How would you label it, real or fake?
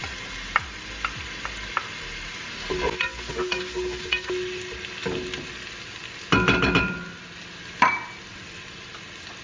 real